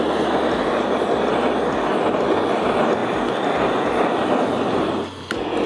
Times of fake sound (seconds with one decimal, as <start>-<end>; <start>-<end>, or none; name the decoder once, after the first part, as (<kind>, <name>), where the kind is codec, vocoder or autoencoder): none